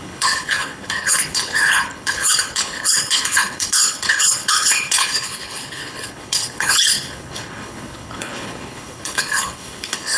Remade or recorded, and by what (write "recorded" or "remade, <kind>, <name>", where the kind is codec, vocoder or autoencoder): remade, codec, HILCodec